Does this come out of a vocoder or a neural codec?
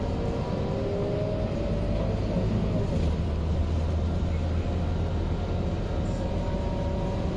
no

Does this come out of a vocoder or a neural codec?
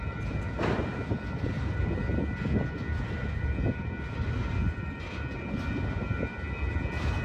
no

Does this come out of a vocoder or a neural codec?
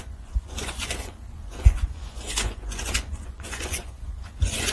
yes